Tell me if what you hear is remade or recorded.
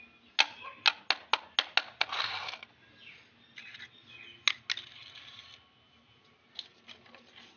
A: recorded